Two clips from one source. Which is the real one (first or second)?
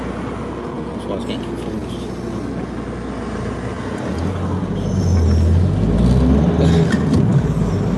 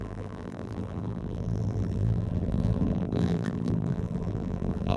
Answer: first